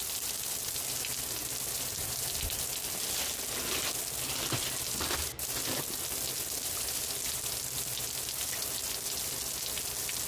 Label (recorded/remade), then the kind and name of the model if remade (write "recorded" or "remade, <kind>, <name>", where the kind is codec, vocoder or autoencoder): recorded